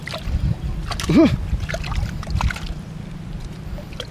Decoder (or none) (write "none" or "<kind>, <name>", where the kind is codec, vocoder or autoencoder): none